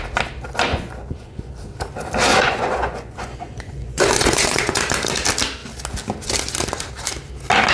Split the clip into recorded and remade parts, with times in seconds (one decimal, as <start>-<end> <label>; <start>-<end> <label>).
0.0-0.7 recorded; 0.7-1.5 remade; 1.5-2.3 recorded; 2.3-4.8 remade; 4.8-7.7 recorded